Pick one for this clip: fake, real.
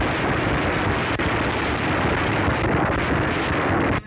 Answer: real